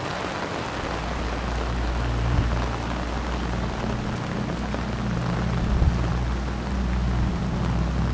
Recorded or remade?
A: recorded